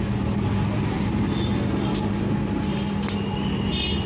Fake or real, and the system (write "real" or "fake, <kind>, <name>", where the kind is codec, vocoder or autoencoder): real